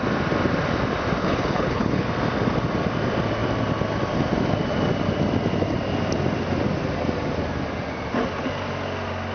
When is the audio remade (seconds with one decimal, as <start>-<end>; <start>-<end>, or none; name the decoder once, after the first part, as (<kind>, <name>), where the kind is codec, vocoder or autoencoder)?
1.2-2.1 (codec, HILCodec)